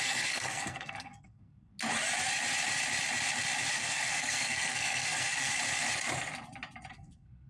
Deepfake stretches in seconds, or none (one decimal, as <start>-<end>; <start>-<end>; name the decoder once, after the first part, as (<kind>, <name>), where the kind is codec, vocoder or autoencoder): 0.0-1.7 (codec, SNAC); 3.7-5.5; 6.9-7.5